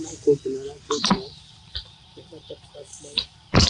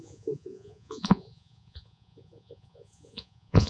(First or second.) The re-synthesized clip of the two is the second